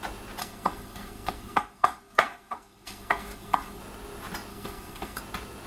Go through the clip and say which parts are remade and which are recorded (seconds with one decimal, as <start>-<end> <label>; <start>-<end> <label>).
0.0-0.4 recorded; 0.4-3.8 remade; 3.8-4.5 recorded; 4.5-5.2 remade; 5.2-5.7 recorded